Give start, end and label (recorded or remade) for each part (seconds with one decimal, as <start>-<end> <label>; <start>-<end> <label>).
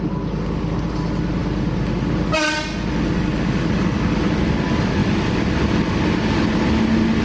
0.0-7.2 recorded